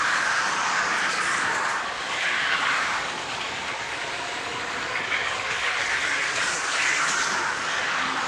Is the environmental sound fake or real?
fake